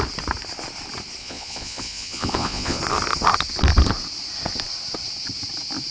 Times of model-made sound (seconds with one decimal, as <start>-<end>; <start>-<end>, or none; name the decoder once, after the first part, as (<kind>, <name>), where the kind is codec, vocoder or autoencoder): 1.2-2.8 (vocoder, Vocos)